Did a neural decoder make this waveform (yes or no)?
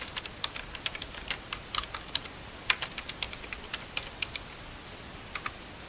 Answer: no